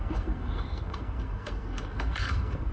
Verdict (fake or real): fake